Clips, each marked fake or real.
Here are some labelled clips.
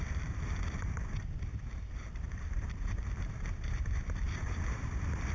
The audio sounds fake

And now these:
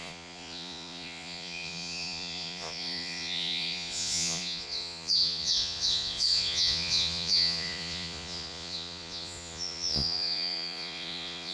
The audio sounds fake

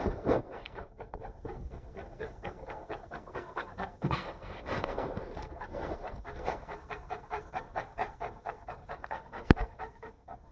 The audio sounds fake